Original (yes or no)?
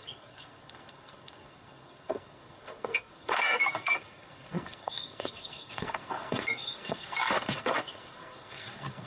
no